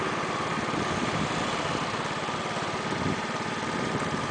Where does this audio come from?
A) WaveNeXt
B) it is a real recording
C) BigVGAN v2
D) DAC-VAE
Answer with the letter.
B